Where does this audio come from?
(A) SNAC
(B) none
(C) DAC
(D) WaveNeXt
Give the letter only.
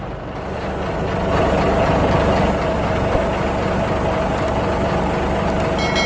B